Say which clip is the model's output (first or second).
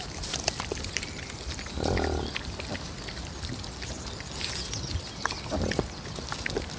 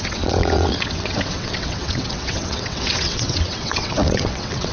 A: second